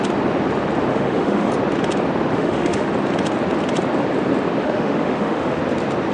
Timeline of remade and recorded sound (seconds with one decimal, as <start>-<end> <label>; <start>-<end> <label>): 0.0-0.9 recorded; 0.9-1.5 remade; 1.5-2.3 recorded; 2.3-2.9 remade; 2.9-4.6 recorded; 4.6-5.6 remade; 5.6-6.1 recorded